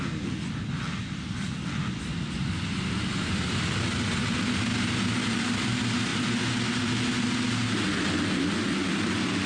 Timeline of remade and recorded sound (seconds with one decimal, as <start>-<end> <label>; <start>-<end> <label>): 0.0-2.1 recorded; 2.1-4.4 remade; 4.4-6.1 recorded; 6.1-6.8 remade; 6.8-9.5 recorded

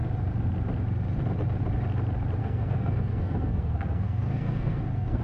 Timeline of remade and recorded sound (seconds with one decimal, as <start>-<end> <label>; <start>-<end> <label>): 0.0-2.4 recorded; 2.4-5.2 remade

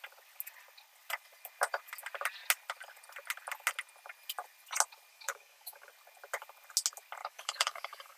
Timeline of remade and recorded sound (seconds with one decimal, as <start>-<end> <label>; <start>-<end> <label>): 0.0-5.1 recorded; 5.1-5.9 remade; 5.9-7.2 recorded; 7.2-8.2 remade

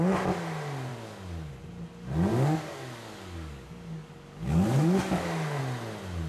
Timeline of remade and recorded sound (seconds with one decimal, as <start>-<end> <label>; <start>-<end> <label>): 0.0-0.9 recorded; 0.9-1.5 remade; 1.5-2.3 recorded; 2.3-5.6 remade; 5.6-6.3 recorded